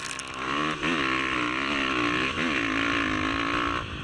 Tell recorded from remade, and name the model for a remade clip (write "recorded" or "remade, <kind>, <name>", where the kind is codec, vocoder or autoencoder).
recorded